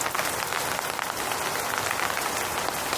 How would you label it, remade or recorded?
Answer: recorded